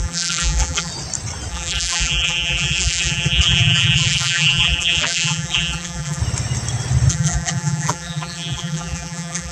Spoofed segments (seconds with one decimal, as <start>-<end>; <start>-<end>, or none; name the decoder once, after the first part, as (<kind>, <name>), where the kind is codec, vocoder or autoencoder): 0.0-0.9 (vocoder, BigVGAN v2); 1.5-6.2; 7.1-9.5

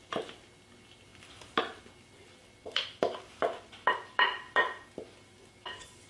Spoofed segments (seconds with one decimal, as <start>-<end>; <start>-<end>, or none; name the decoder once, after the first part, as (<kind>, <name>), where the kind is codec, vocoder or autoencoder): 1.1-1.6 (vocoder, BigVGAN v2); 2.4-6.1

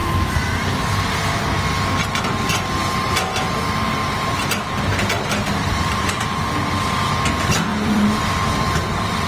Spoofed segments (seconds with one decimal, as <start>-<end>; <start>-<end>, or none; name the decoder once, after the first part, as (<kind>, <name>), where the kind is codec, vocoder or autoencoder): 0.0-1.4 (vocoder, BigVGAN v2); 4.0-6.6; 7.7-8.4

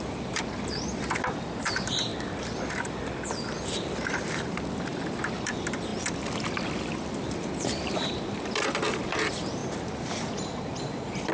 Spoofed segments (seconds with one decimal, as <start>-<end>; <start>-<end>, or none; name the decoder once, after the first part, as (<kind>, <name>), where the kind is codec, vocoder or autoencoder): 0.0-2.1 (vocoder, BigVGAN v2); 2.7-5.9; 6.8-9.6; 10.8-11.3

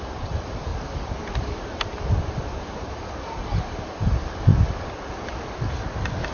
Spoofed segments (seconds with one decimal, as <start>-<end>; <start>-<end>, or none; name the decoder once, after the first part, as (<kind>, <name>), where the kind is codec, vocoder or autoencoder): 0.0-0.7 (vocoder, BigVGAN v2); 3.2-4.5